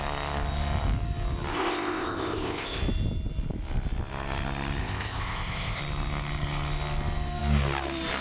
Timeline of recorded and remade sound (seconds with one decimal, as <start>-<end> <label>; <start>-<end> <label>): 0.0-1.5 recorded; 1.5-2.8 remade; 2.8-4.8 recorded; 4.8-5.8 remade; 5.8-8.2 recorded